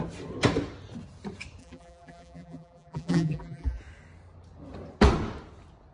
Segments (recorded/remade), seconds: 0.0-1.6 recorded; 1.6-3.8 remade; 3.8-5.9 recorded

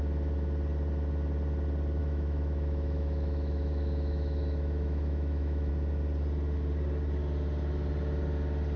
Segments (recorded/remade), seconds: 0.0-2.0 recorded; 2.0-5.7 remade; 5.7-8.8 recorded

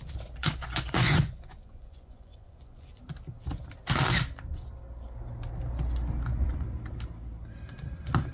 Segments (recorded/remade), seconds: 0.0-0.4 recorded; 0.4-3.0 remade; 3.0-8.3 recorded

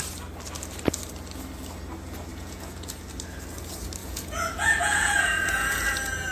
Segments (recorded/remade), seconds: 0.0-2.3 recorded; 2.3-2.9 remade; 2.9-4.0 recorded; 4.0-6.3 remade

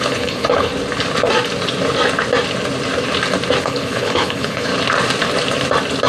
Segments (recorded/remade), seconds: 0.0-0.7 remade; 0.7-3.6 recorded; 3.6-4.7 remade; 4.7-6.1 recorded

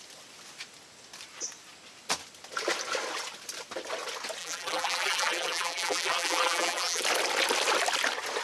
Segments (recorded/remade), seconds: 0.0-4.4 recorded; 4.4-7.0 remade; 7.0-8.4 recorded

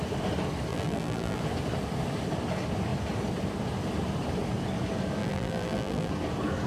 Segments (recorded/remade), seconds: 0.0-0.7 recorded; 0.7-1.4 remade; 1.4-5.2 recorded; 5.2-6.1 remade; 6.1-6.7 recorded